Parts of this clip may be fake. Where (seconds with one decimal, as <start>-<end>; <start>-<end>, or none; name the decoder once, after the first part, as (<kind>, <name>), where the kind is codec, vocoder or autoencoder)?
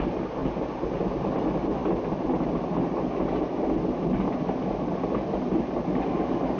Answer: none